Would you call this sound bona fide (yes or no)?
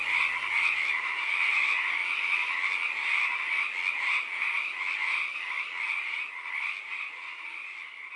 yes